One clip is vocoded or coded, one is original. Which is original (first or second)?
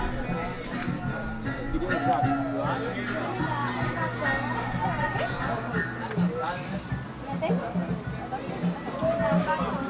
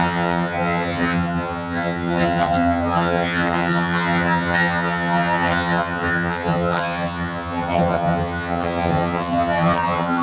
first